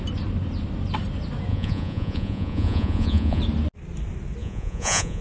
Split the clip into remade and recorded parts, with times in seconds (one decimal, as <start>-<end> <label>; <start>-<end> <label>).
0.0-1.5 recorded; 1.5-3.4 remade; 3.4-4.4 recorded; 4.4-5.2 remade